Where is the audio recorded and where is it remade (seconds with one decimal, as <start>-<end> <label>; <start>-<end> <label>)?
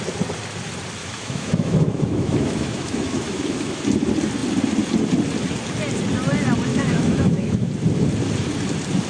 0.0-1.0 recorded; 1.0-3.8 remade; 3.8-6.7 recorded; 6.7-7.7 remade; 7.7-9.1 recorded